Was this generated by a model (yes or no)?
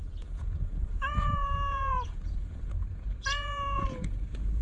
yes